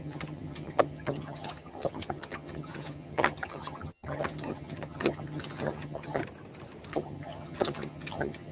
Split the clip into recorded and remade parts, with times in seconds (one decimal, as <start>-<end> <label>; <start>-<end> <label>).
0.0-6.2 remade; 6.2-6.9 recorded; 6.9-8.5 remade